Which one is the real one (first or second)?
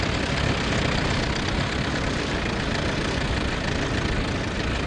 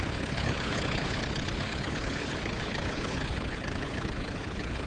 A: first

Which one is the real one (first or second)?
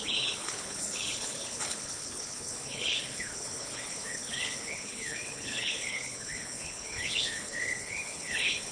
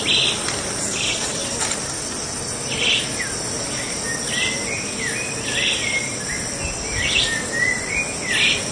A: second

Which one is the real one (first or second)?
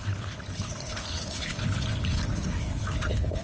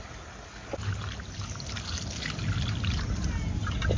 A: second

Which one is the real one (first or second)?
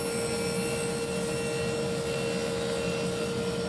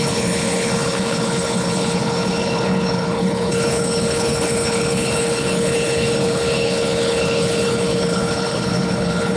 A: first